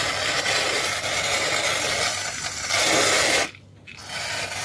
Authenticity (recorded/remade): recorded